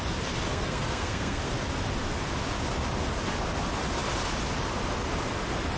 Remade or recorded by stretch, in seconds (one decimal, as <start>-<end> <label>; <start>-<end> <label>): 0.0-0.5 recorded; 0.5-1.5 remade; 1.5-5.8 recorded